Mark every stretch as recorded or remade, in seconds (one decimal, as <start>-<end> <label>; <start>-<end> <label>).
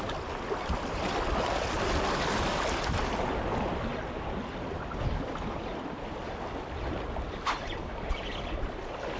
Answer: 0.0-9.2 recorded